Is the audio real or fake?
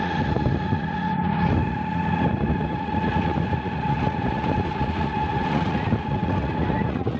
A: fake